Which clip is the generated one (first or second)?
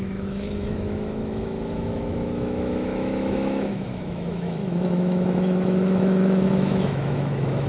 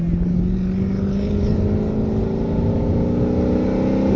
first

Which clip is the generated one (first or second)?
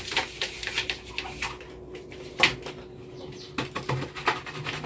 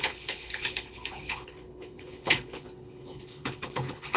second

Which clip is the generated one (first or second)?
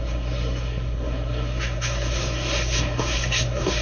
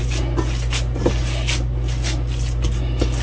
first